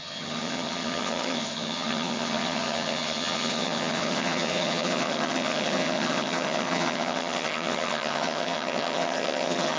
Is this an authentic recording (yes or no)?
no